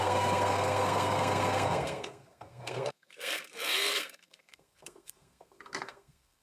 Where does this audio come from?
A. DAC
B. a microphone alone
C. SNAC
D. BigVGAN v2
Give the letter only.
C